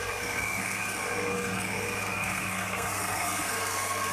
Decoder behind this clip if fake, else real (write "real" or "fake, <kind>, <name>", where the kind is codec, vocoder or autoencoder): fake, codec, SNAC